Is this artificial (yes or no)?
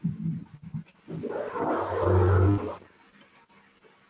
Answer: no